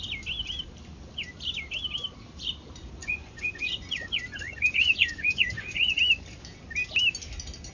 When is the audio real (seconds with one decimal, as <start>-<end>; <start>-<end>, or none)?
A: 0.0-3.0; 6.0-7.7